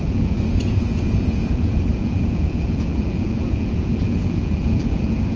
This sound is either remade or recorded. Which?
remade